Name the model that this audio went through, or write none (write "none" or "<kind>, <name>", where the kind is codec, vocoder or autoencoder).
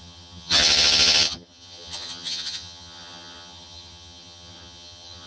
vocoder, HiFi-GAN